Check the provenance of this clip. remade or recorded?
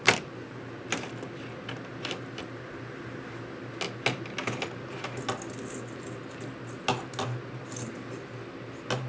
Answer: recorded